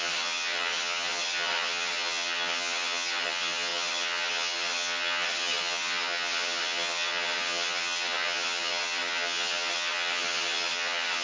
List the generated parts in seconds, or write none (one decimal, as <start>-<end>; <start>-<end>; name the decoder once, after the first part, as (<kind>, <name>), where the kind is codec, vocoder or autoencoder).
0.0-11.2 (vocoder, HiFi-GAN)